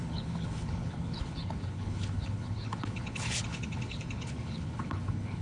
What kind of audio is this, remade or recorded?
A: remade